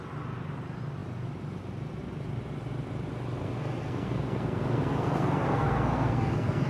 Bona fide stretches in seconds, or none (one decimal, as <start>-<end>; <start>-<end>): 0.0-3.4